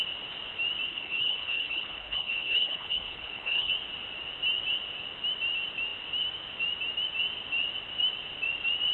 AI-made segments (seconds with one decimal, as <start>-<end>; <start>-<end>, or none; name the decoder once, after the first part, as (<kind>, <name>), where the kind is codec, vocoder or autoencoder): 0.9-3.7 (codec, HILCodec)